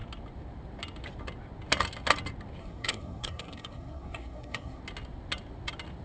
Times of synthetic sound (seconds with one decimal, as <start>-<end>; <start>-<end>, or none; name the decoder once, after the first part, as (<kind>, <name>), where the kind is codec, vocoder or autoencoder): 2.6-4.8 (codec, SNAC)